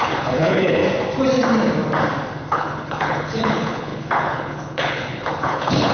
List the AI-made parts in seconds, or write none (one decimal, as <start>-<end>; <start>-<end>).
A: 0.0-0.8; 2.5-5.9